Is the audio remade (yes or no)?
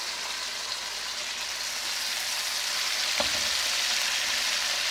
no